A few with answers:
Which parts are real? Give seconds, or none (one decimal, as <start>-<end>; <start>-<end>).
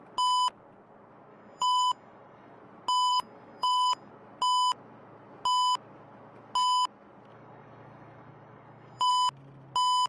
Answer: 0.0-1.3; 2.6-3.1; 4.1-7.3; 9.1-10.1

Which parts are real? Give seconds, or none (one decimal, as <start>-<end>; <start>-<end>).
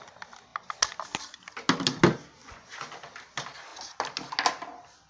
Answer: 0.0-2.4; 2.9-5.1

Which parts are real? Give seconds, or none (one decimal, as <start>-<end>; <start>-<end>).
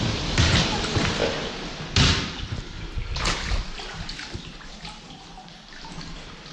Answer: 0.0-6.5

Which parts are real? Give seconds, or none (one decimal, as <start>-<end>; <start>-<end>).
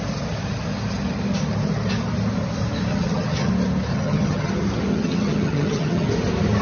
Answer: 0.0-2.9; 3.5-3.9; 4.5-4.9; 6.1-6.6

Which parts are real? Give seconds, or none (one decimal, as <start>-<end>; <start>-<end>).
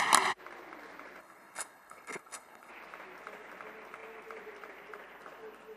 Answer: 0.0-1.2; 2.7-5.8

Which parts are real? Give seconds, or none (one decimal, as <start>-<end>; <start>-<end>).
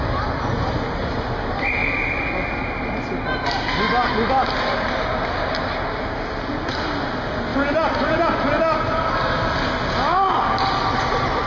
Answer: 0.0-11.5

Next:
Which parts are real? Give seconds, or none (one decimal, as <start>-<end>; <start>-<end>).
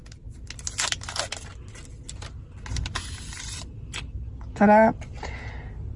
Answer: 0.0-6.0